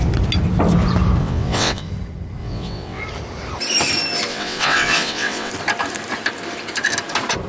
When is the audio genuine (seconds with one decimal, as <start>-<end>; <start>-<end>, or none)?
0.0-1.2; 1.9-2.4; 3.0-4.3; 5.5-7.5